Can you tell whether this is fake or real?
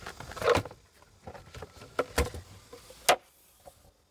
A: real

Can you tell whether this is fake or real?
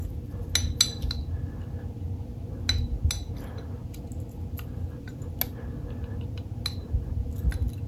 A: real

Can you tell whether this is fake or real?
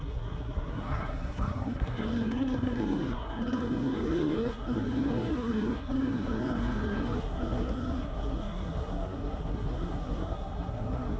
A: fake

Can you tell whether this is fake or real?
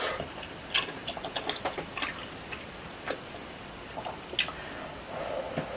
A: real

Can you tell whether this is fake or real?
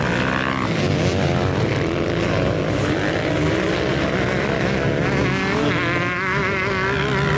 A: real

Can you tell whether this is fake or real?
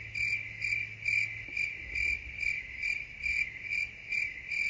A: real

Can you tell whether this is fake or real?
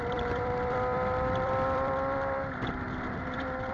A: fake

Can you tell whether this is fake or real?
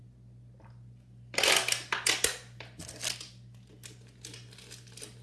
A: real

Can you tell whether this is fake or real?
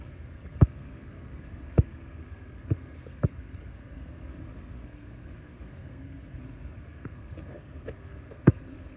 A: fake